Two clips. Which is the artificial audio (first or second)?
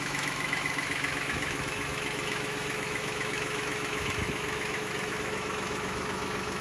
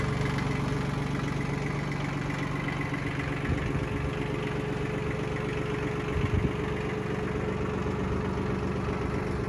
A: first